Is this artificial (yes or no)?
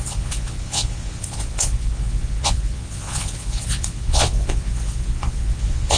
yes